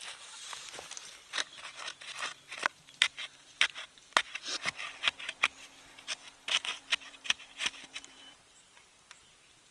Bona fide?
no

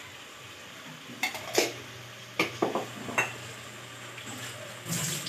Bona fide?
yes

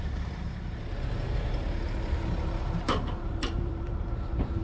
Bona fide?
no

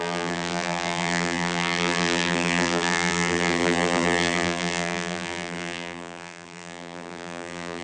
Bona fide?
no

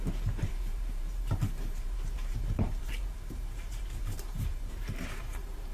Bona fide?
no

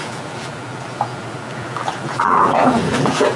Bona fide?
no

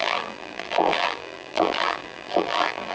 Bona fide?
no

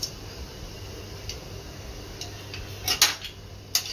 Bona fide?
yes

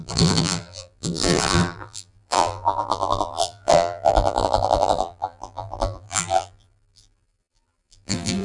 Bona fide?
no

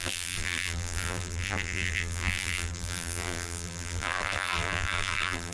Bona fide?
no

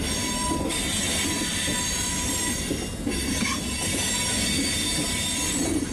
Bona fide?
yes